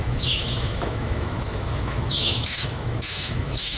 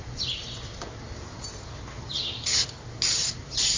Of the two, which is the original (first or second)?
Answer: second